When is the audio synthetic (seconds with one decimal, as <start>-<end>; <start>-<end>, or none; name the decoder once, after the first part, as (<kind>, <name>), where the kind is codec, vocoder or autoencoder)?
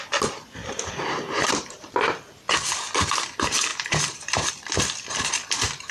0.6-1.9 (vocoder, BigVGAN v2); 3.7-4.5